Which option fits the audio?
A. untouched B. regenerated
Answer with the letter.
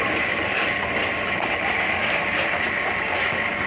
A